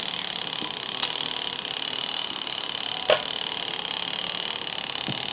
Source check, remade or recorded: recorded